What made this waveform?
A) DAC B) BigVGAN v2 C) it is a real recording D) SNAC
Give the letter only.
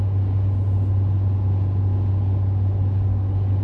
C